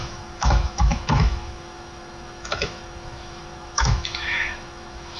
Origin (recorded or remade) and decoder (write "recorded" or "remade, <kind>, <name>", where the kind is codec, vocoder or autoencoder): remade, autoencoder, DAC-VAE